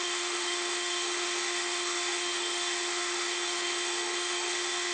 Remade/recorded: remade